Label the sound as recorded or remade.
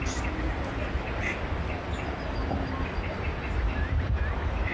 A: remade